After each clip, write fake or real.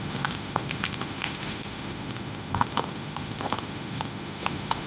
fake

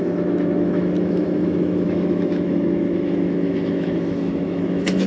fake